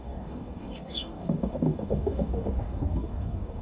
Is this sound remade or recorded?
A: remade